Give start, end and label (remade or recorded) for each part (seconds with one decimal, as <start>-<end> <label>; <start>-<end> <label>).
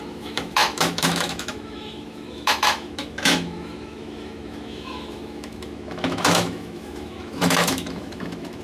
0.0-8.6 remade